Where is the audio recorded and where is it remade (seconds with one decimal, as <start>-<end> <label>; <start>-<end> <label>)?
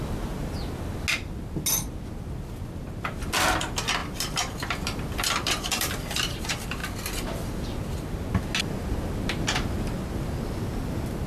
0.0-4.0 recorded; 4.0-6.2 remade; 6.2-11.3 recorded